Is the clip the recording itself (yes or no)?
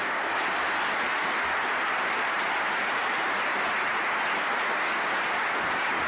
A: yes